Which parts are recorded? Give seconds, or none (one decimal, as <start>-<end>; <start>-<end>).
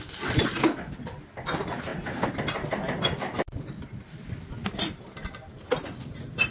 0.0-6.5